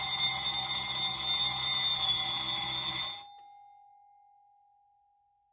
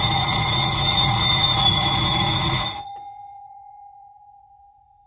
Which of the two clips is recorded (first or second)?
first